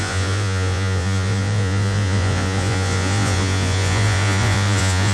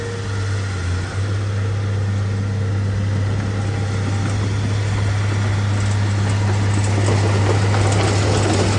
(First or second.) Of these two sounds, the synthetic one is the first